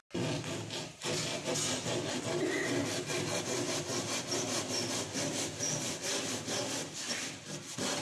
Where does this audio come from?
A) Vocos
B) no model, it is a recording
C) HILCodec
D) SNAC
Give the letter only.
B